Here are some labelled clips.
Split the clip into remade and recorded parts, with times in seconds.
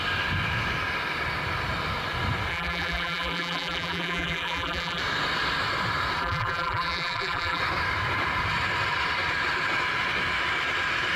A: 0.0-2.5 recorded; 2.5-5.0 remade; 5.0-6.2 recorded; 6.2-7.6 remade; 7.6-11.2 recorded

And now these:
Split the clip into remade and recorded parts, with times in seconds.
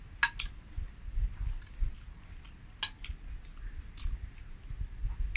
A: 0.0-5.4 recorded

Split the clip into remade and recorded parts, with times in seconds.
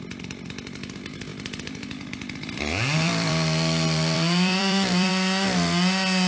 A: 0.0-1.3 recorded; 1.3-5.1 remade; 5.1-6.3 recorded